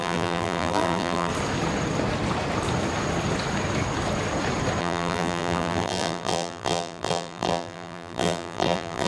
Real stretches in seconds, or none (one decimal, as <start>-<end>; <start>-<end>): 1.3-4.8